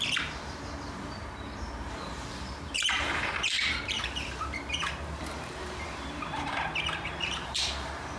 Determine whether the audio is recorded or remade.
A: remade